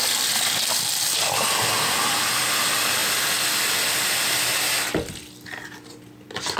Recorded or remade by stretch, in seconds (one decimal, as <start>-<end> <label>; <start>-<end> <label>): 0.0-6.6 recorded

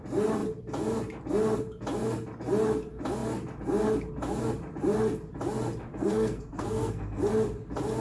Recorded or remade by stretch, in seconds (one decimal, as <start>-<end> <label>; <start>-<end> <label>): 0.0-5.9 recorded; 5.9-7.2 remade; 7.2-8.0 recorded

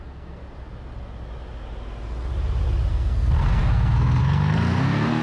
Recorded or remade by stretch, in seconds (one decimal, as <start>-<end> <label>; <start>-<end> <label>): 0.0-0.4 remade; 0.4-2.9 recorded; 2.9-5.2 remade

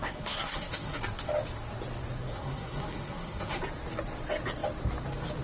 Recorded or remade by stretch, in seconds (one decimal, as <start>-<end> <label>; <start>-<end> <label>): 0.0-1.0 remade; 1.0-2.3 recorded; 2.3-3.6 remade; 3.6-5.4 recorded